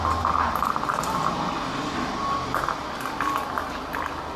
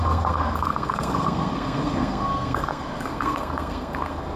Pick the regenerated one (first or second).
second